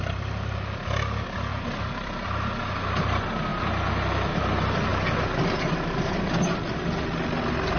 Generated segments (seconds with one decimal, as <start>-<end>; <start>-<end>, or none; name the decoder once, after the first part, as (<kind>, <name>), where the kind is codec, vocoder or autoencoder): none